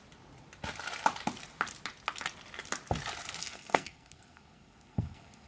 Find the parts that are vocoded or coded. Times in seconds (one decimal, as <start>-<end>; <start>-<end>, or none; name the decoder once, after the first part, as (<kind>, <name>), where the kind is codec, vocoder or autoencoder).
3.4-5.5 (codec, SNAC)